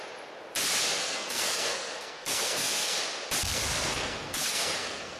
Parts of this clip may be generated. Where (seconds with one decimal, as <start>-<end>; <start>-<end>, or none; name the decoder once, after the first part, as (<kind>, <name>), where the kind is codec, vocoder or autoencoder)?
1.0-3.0 (codec, SNAC); 3.4-5.2